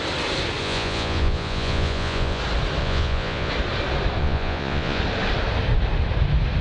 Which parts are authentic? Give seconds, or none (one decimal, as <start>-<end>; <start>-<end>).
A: 0.0-0.6; 2.4-2.8; 3.5-4.2; 5.0-6.6